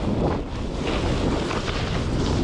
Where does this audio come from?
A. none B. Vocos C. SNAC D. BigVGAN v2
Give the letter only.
A